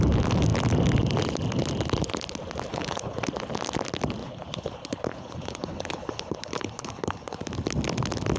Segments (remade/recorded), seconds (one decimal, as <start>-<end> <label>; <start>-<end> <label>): 0.0-2.7 recorded; 2.7-3.2 remade; 3.2-4.2 recorded; 4.2-7.4 remade; 7.4-8.4 recorded

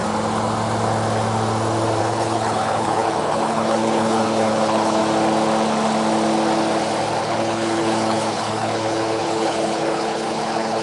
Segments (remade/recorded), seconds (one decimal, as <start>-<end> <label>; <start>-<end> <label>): 0.0-2.0 recorded; 2.0-5.0 remade; 5.0-7.2 recorded; 7.2-10.8 remade

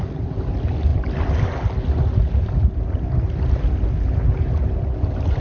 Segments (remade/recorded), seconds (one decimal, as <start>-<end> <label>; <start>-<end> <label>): 0.0-5.4 recorded

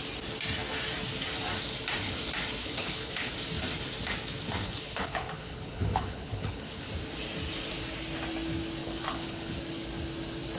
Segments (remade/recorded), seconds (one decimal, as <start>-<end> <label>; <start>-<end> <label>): 0.0-2.6 recorded; 2.6-3.3 remade; 3.3-4.6 recorded; 4.6-6.9 remade; 6.9-8.8 recorded; 8.8-9.6 remade; 9.6-10.6 recorded